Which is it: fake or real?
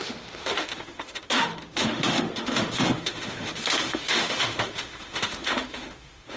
fake